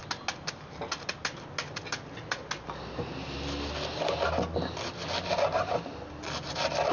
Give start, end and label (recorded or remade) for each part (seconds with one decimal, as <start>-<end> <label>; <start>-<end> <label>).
0.0-6.9 recorded

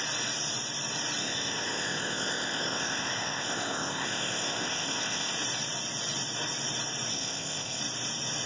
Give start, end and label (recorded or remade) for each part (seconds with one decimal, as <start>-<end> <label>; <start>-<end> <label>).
0.0-1.2 recorded; 1.2-5.3 remade; 5.3-7.1 recorded; 7.1-7.8 remade; 7.8-8.5 recorded